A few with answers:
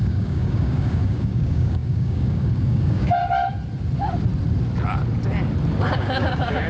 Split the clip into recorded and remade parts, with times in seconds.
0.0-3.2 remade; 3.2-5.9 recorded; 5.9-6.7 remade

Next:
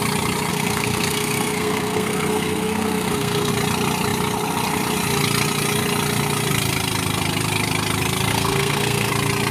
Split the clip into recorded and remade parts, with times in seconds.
0.0-0.5 recorded; 0.5-3.5 remade; 3.5-8.3 recorded; 8.3-9.1 remade; 9.1-9.5 recorded

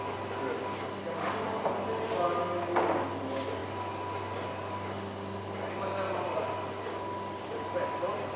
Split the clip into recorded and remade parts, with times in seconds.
0.0-8.4 recorded

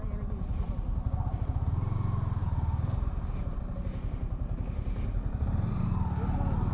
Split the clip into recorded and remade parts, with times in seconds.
0.0-6.7 recorded

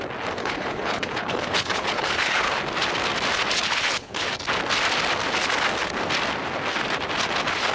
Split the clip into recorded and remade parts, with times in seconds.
0.0-0.4 recorded; 0.4-2.6 remade; 2.6-3.6 recorded; 3.6-4.2 remade; 4.2-7.7 recorded

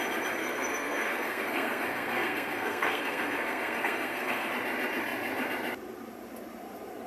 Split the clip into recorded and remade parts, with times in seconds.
0.0-0.4 recorded; 0.4-4.5 remade; 4.5-7.1 recorded

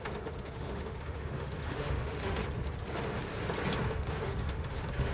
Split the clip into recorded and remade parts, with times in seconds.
0.0-2.4 remade; 2.4-3.9 recorded; 3.9-5.1 remade